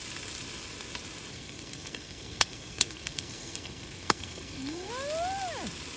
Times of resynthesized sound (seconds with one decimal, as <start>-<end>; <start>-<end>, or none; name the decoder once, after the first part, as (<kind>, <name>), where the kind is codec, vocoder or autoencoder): 1.3-4.9 (codec, SNAC)